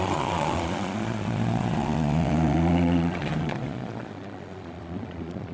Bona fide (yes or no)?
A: no